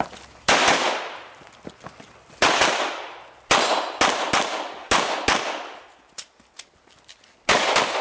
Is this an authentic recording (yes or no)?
yes